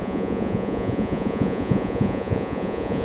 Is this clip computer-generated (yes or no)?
yes